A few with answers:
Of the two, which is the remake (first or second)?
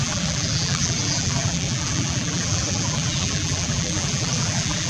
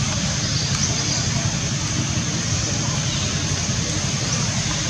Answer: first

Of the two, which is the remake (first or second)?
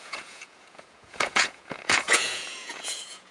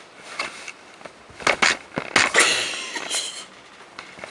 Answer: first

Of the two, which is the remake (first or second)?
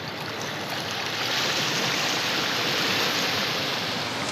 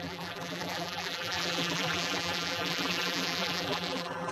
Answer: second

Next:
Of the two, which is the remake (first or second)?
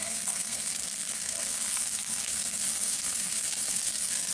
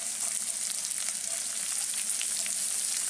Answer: first